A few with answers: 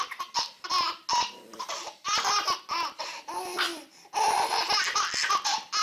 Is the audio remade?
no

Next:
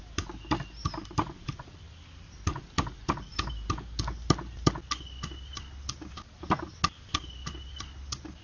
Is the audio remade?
no